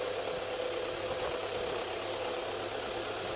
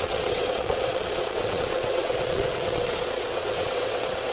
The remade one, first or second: second